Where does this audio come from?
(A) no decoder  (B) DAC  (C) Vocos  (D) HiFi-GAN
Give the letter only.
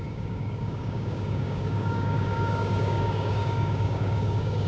B